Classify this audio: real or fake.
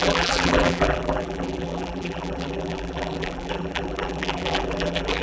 fake